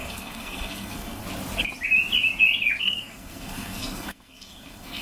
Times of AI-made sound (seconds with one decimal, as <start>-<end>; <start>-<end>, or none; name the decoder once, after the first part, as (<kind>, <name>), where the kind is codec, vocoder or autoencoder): 0.0-1.2 (codec, SNAC); 2.8-5.0